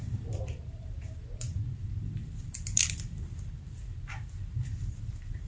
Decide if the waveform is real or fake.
fake